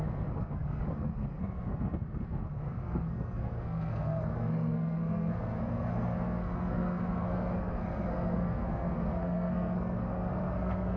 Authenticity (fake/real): fake